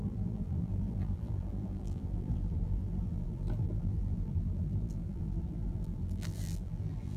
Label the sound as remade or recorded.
remade